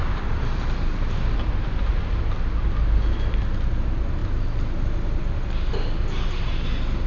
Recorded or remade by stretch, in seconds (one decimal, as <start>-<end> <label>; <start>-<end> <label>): 0.0-2.2 remade; 2.2-7.1 recorded

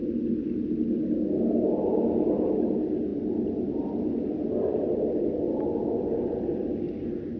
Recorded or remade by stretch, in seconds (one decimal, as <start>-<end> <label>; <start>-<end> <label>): 0.0-3.1 recorded; 3.1-6.7 remade; 6.7-7.4 recorded

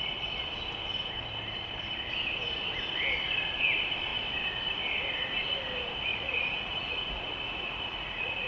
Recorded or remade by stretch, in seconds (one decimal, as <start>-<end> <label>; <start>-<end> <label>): 0.0-6.1 recorded; 6.1-8.5 remade

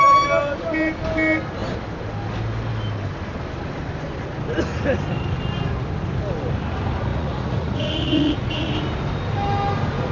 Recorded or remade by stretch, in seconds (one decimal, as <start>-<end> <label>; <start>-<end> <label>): 0.0-7.1 recorded; 7.1-8.7 remade; 8.7-10.1 recorded

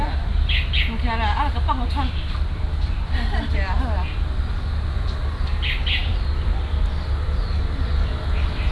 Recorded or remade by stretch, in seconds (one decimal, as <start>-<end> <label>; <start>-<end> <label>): 0.0-6.0 recorded; 6.0-6.9 remade; 6.9-8.7 recorded

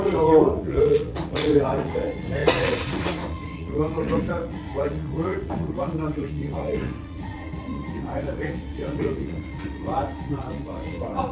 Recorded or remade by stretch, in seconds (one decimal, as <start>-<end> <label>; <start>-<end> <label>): 0.0-11.3 remade

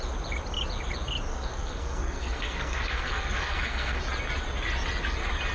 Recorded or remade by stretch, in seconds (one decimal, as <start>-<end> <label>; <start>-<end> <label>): 0.0-1.3 recorded; 1.3-4.0 remade; 4.0-5.5 recorded